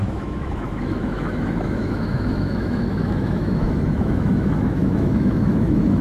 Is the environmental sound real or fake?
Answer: fake